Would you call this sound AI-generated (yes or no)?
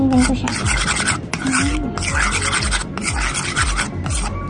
no